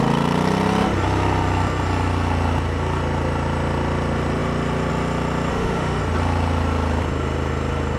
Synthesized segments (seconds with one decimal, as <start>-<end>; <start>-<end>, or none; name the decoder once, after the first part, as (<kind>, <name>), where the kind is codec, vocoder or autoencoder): 5.5-6.0 (autoencoder, DAC-VAE)